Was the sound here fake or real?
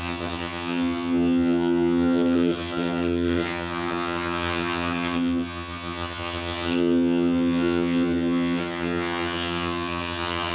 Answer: fake